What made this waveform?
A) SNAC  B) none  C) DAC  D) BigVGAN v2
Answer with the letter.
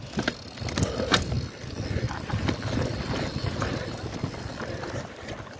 B